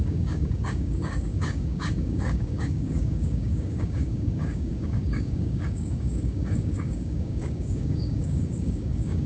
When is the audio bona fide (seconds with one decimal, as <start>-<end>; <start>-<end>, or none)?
none